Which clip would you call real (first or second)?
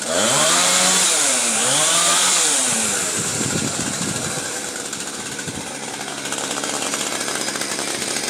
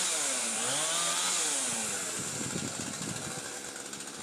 second